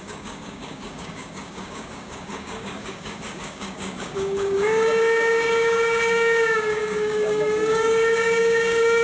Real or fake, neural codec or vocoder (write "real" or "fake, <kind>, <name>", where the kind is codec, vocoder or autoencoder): fake, codec, DAC